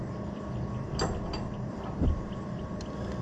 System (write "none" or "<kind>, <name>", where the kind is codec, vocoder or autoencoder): vocoder, BigVGAN v2